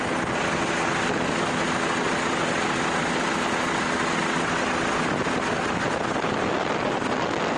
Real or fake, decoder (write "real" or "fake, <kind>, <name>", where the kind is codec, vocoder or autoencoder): real